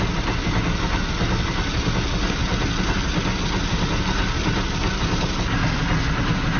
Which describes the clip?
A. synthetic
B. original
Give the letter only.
B